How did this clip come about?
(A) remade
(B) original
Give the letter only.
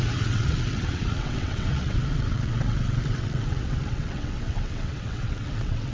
A